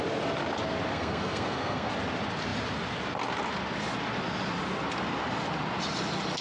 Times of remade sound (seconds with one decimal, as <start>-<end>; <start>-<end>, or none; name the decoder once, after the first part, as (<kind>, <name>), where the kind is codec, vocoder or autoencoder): 0.9-1.9 (codec, SNAC)